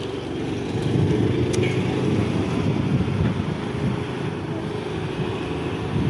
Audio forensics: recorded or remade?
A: recorded